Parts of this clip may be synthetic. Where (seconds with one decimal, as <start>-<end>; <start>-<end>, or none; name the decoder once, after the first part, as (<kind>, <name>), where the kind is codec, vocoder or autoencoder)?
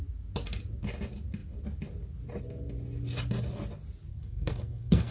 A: 4.1-5.1 (codec, SNAC)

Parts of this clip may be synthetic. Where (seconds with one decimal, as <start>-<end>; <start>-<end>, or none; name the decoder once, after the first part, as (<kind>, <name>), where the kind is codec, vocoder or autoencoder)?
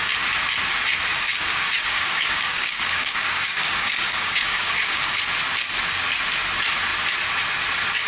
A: 1.1-5.2 (codec, DAC)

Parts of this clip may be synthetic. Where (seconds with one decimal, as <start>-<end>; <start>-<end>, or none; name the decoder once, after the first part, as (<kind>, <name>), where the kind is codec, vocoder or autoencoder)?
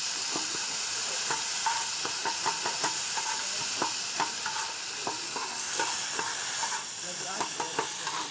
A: 0.6-3.3 (vocoder, Vocos)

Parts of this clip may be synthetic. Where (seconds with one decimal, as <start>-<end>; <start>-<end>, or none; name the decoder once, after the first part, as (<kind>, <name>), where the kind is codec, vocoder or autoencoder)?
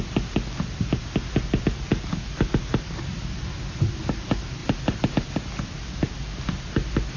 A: none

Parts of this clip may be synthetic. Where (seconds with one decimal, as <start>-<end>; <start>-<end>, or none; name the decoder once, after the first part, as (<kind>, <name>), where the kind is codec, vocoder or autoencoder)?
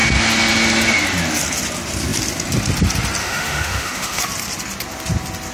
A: 3.2-4.2 (autoencoder, DAC-VAE)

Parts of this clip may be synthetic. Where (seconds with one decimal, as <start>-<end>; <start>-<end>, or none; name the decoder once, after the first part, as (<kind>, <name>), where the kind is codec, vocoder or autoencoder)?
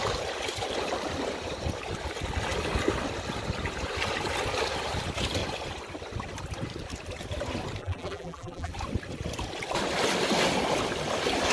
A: 7.8-8.7 (vocoder, BigVGAN v2)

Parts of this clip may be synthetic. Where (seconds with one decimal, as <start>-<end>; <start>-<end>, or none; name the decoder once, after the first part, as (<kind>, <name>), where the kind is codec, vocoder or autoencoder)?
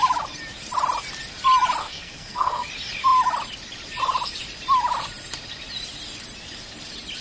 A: 1.8-2.7 (codec, SNAC)